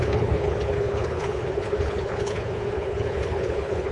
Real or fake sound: fake